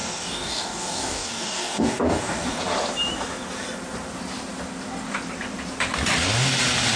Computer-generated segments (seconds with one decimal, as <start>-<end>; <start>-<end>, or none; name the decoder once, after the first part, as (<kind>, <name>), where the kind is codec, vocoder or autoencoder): 0.0-2.6 (codec, DAC)